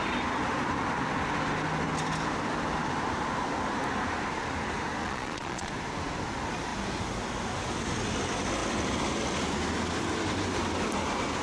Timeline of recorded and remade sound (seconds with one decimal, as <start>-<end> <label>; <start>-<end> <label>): 0.0-5.0 recorded; 5.0-5.7 remade; 5.7-11.4 recorded